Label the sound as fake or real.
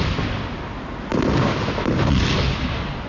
real